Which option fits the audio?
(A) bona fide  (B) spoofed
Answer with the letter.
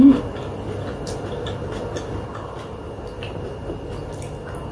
A